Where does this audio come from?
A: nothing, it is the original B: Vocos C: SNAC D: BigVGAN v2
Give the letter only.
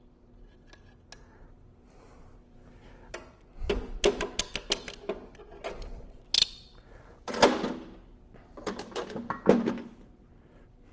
A